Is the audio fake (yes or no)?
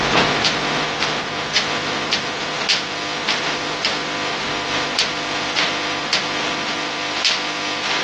no